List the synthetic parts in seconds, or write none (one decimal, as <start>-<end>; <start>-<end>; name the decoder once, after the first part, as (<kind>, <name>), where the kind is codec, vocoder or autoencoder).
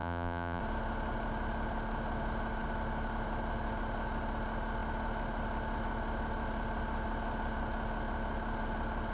0.0-0.6 (vocoder, BigVGAN v2)